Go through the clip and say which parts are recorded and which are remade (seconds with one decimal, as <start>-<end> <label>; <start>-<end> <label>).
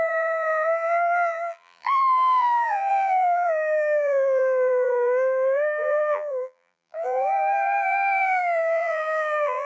0.0-9.7 remade